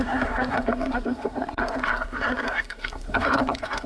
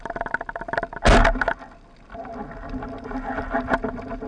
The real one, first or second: second